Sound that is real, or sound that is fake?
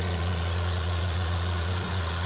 fake